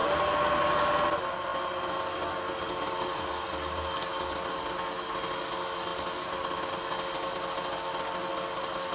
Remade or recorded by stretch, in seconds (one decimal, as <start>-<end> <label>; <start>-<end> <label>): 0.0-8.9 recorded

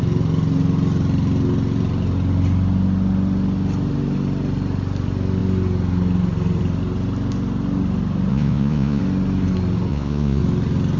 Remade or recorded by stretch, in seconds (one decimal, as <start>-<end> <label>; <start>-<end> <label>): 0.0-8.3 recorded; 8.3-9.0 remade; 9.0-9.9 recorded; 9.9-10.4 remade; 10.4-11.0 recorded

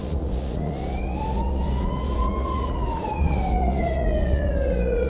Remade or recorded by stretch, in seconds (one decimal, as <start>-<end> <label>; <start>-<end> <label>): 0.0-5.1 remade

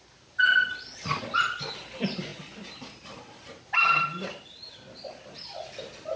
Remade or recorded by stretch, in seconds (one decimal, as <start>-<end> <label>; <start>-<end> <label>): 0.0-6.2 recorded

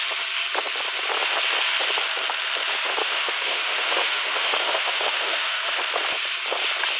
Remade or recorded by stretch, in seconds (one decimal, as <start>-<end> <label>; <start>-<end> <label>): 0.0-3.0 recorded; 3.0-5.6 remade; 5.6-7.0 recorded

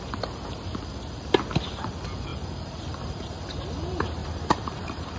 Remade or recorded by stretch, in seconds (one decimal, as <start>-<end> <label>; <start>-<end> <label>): 0.0-2.3 recorded; 2.3-3.4 remade; 3.4-4.2 recorded; 4.2-5.2 remade

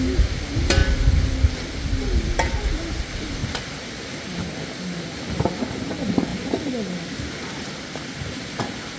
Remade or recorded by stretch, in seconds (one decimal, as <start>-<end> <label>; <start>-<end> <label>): 0.0-9.0 recorded

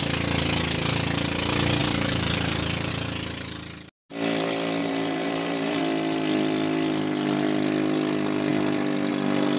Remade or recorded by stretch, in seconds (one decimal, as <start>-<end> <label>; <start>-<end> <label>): 0.0-1.8 recorded; 1.8-2.9 remade; 2.9-4.8 recorded; 4.8-5.8 remade; 5.8-9.6 recorded